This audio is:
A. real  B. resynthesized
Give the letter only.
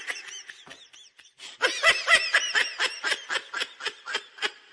B